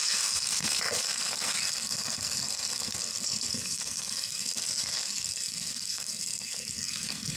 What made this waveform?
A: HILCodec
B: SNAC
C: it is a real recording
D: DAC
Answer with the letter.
B